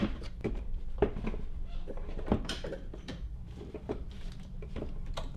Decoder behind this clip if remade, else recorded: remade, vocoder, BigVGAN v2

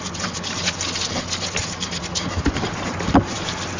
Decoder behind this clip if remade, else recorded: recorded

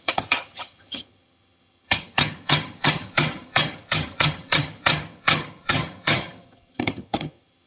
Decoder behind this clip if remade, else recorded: remade, vocoder, HiFi-GAN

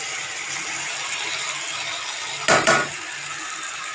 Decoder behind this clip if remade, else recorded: recorded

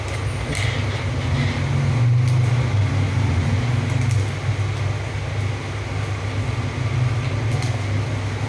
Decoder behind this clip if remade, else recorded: recorded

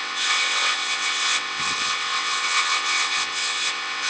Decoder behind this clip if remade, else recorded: remade, vocoder, WaveNeXt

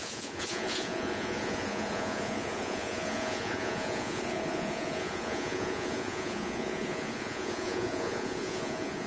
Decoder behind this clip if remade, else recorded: remade, vocoder, Vocos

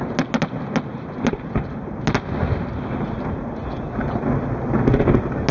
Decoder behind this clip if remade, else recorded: recorded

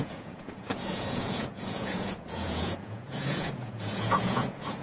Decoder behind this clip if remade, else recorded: remade, vocoder, Vocos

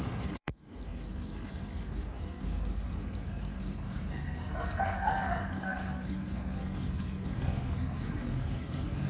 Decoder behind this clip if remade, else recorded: remade, codec, SNAC